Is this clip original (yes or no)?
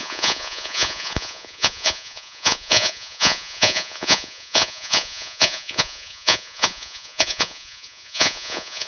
no